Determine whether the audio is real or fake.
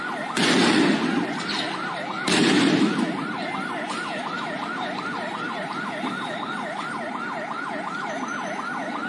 real